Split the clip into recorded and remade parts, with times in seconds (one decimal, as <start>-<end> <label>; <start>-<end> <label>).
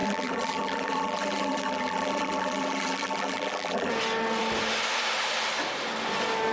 0.0-3.9 remade; 3.9-6.5 recorded